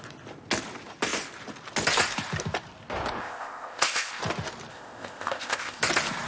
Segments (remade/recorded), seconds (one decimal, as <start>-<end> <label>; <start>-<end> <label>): 0.0-3.2 recorded; 3.2-4.2 remade; 4.2-4.7 recorded; 4.7-5.8 remade; 5.8-6.3 recorded